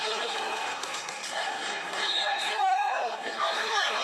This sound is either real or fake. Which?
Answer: fake